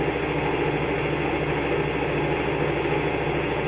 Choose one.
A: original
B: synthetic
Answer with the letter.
A